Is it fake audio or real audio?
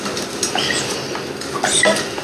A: real